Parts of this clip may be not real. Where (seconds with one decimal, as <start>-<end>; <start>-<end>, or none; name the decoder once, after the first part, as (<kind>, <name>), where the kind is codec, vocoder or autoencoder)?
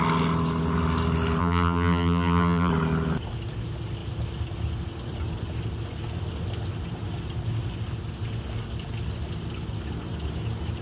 1.4-2.7 (vocoder, BigVGAN v2)